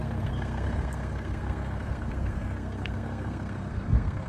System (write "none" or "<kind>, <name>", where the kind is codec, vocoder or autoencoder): codec, SNAC